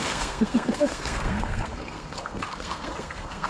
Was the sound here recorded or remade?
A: remade